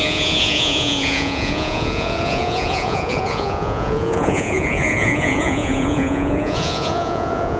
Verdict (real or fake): fake